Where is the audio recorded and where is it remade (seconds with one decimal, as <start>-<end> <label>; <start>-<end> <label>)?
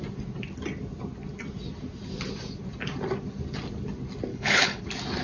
0.0-4.3 recorded; 4.3-4.8 remade; 4.8-5.2 recorded